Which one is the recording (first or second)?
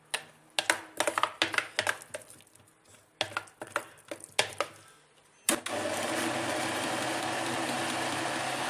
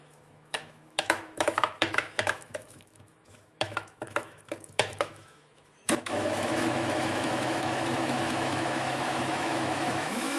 first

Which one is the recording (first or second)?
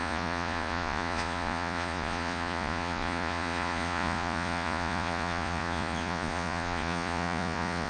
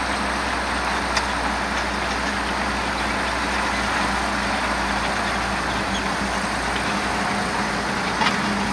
second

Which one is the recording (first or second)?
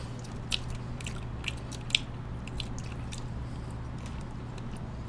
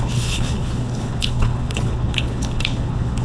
first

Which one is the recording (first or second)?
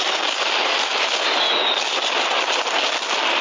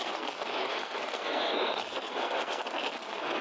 first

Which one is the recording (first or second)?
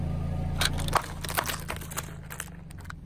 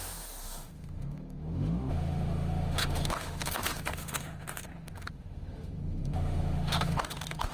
first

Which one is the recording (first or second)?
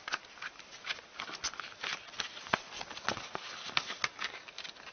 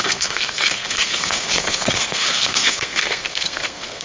first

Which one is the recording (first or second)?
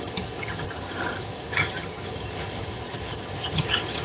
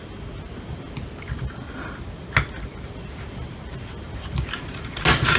second